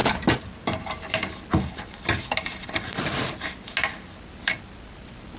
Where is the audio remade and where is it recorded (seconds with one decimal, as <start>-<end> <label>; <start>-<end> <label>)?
0.0-5.4 recorded